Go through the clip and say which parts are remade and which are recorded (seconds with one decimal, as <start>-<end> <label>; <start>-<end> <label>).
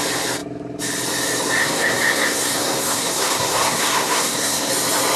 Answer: 0.0-1.6 recorded; 1.6-4.7 remade; 4.7-5.2 recorded